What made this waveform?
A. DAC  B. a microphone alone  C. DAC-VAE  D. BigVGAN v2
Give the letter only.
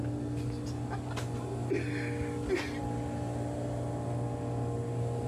B